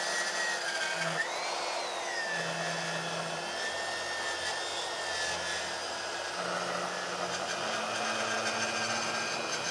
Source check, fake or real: real